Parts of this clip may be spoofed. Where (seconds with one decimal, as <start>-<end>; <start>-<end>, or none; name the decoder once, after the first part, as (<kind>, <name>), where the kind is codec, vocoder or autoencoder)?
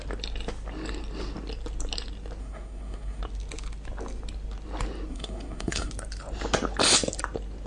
2.4-3.2 (codec, SNAC); 5.1-5.9